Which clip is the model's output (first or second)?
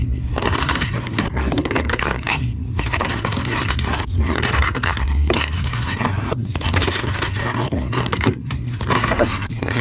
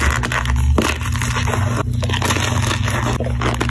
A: first